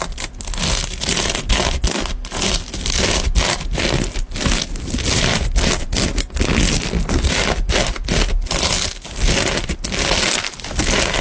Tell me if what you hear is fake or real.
real